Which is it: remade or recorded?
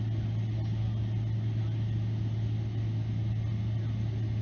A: recorded